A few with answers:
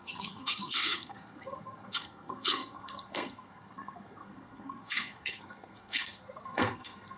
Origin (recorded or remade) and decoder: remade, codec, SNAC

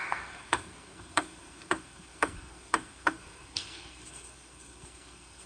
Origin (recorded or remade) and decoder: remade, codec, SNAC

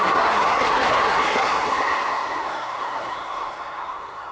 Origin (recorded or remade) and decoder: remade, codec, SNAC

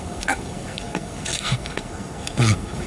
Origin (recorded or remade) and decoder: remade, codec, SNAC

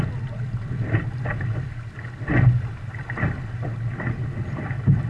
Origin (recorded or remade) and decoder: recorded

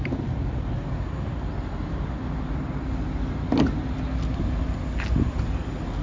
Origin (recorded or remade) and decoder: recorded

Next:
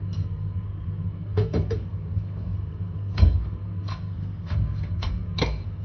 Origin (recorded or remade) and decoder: remade, codec, SNAC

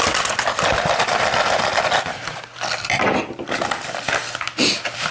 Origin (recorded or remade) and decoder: recorded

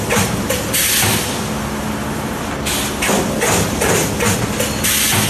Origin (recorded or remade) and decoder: recorded